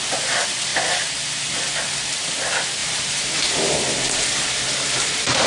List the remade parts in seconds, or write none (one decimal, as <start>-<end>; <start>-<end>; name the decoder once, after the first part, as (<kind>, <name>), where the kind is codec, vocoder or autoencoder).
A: 2.8-5.5 (vocoder, BigVGAN v2)